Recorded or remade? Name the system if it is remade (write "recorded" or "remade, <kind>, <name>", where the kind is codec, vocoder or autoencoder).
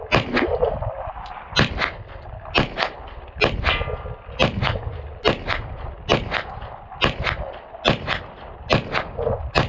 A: recorded